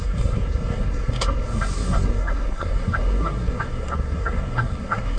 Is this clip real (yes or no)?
no